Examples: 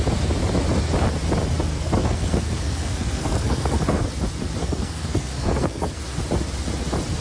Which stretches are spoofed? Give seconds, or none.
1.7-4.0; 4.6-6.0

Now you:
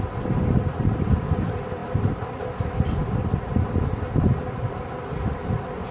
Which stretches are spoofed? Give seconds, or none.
none